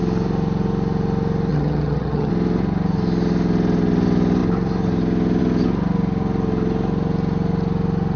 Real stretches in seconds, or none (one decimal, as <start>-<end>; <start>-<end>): 0.0-1.5; 2.3-8.2